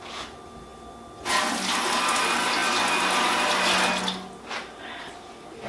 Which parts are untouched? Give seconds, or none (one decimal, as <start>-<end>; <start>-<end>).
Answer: 0.0-5.7